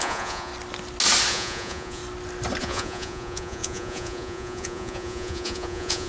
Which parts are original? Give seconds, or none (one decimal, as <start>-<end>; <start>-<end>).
0.5-1.3; 2.0-2.6